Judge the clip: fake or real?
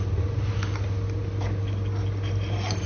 real